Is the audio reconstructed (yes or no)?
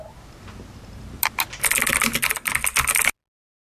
no